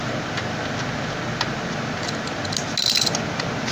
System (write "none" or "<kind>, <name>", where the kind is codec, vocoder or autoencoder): none